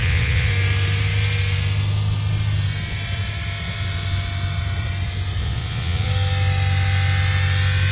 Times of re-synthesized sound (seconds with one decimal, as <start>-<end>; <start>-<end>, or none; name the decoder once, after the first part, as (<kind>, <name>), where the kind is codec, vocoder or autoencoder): 0.0-0.5 (vocoder, Vocos); 5.4-6.1